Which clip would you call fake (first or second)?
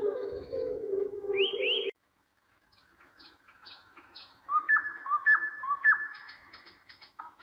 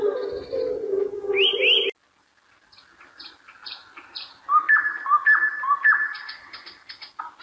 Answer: first